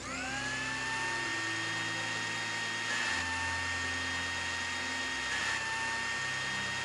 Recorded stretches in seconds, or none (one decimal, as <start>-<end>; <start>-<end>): 0.0-6.8